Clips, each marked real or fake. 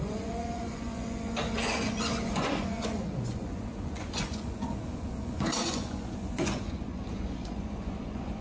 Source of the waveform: fake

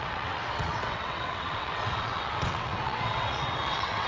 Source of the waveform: fake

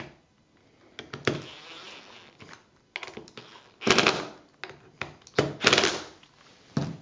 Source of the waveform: real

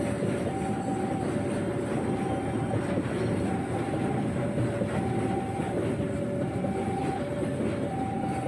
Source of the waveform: real